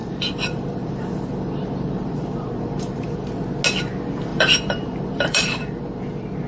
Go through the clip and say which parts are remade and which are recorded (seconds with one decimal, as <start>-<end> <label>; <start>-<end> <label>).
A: 0.0-3.3 remade; 3.3-4.3 recorded; 4.3-5.8 remade; 5.8-6.5 recorded